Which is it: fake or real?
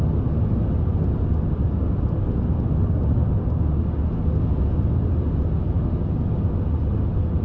real